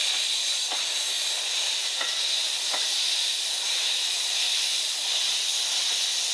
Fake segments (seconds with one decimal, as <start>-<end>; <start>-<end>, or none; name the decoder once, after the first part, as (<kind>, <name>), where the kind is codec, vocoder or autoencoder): 0.0-0.8 (vocoder, Vocos)